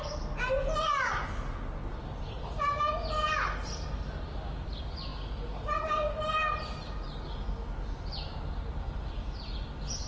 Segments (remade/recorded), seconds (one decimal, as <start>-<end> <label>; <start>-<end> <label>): 0.0-10.1 recorded